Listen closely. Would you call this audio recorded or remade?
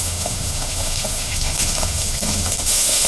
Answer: remade